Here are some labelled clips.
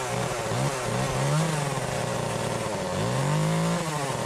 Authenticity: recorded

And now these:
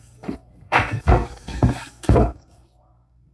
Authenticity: remade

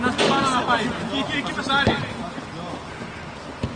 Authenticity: recorded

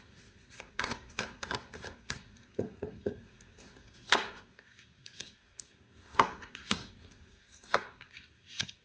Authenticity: remade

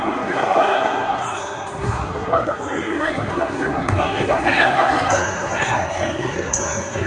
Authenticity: remade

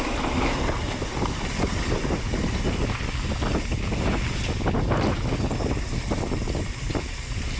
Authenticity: recorded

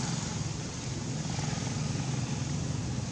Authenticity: recorded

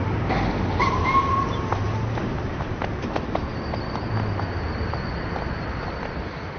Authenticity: recorded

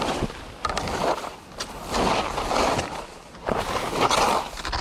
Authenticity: recorded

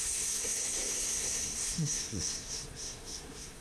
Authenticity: remade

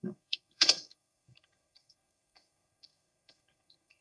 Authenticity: remade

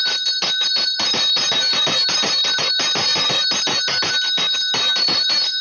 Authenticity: recorded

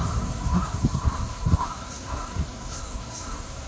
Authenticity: remade